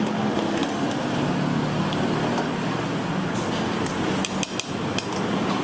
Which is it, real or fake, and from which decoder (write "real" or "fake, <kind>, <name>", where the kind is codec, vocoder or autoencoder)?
real